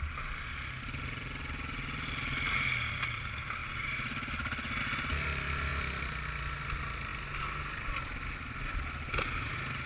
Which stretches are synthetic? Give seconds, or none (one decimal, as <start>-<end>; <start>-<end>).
none